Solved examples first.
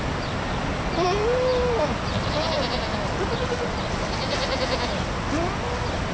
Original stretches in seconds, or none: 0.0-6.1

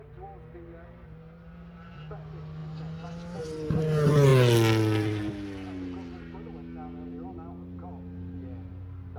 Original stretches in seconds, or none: 0.0-9.2

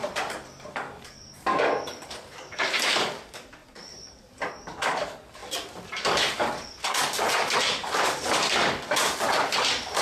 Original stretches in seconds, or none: 0.0-0.7

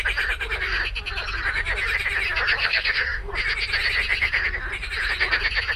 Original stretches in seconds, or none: 0.0-2.6; 3.3-5.8